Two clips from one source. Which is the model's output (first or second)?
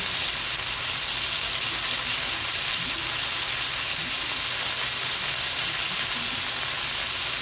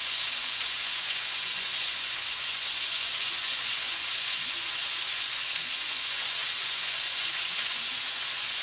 second